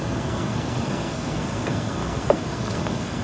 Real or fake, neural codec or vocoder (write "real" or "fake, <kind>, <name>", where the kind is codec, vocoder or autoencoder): fake, codec, SNAC